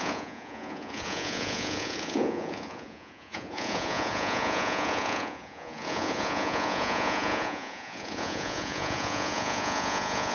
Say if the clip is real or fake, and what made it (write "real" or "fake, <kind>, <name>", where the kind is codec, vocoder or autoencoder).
fake, vocoder, Vocos